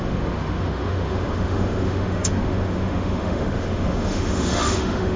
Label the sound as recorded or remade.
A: remade